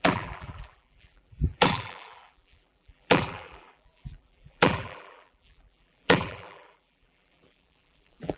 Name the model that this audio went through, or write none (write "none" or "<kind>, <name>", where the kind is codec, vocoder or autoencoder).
vocoder, BigVGAN v2